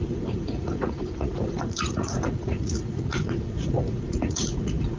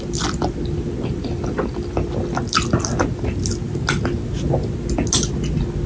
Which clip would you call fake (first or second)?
first